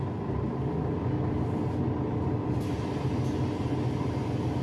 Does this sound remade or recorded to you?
recorded